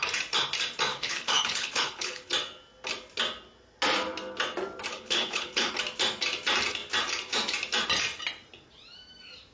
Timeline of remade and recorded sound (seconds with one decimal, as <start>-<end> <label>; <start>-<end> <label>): 0.0-0.9 recorded; 0.9-2.3 remade; 2.3-4.9 recorded; 4.9-5.7 remade; 5.7-9.5 recorded